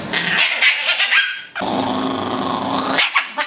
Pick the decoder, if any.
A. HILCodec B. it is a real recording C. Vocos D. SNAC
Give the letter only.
B